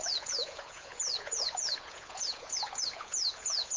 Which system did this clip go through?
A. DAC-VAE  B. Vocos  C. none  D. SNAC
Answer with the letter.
B